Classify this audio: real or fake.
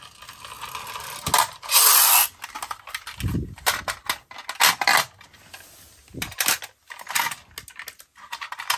real